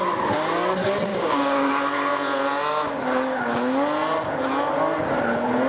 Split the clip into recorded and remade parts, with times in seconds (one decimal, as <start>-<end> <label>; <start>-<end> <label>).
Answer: 0.0-1.1 recorded; 1.1-1.7 remade; 1.7-5.7 recorded